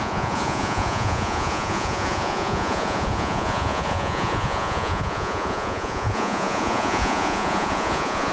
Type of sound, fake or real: fake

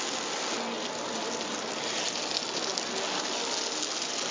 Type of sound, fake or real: real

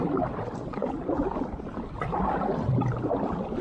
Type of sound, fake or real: real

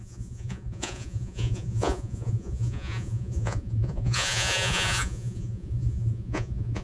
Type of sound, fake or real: fake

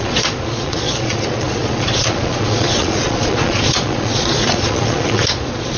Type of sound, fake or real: fake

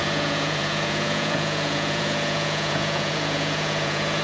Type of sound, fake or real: fake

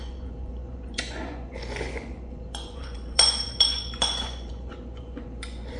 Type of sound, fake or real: fake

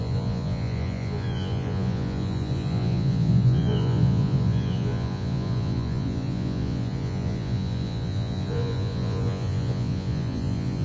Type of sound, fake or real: fake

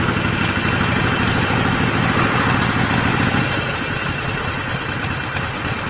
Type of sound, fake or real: real